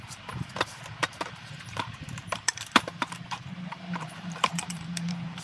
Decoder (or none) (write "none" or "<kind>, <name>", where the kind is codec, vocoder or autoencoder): vocoder, BigVGAN v2